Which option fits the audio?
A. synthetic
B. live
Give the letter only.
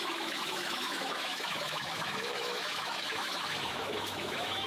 A